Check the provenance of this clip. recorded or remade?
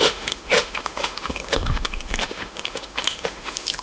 remade